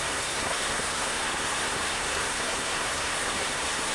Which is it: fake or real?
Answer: fake